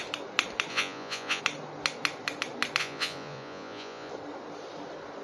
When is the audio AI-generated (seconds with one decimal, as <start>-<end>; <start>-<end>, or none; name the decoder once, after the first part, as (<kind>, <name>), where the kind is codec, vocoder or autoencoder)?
0.7-1.4 (vocoder, Vocos); 2.8-4.1